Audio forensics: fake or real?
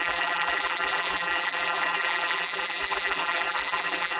fake